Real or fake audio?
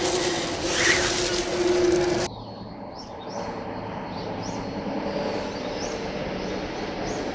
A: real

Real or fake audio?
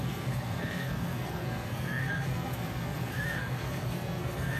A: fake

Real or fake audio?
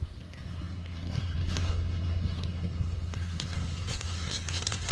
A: fake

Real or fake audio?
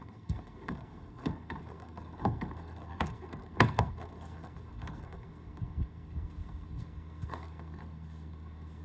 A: fake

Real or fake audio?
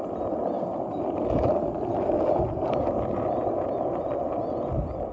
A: real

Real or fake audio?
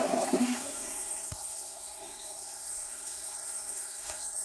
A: fake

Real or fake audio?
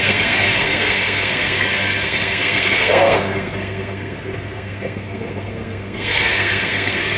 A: fake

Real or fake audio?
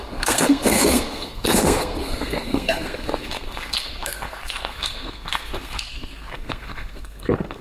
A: fake